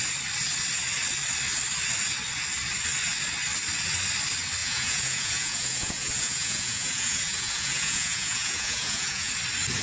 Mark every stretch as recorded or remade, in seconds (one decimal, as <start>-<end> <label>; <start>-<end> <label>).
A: 0.0-4.6 recorded; 4.6-9.3 remade; 9.3-9.8 recorded